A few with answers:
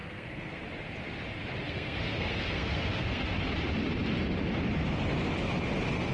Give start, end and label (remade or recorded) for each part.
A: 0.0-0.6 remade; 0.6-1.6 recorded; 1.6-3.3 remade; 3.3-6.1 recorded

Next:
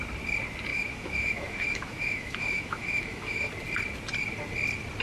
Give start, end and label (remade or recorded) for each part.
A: 0.0-0.7 recorded; 0.7-3.5 remade; 3.5-5.0 recorded